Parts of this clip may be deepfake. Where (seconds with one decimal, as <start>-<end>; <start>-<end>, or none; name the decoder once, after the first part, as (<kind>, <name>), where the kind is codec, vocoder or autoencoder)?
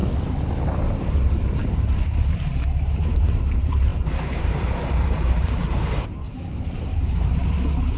1.0-7.4 (vocoder, BigVGAN v2)